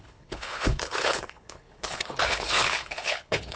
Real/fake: fake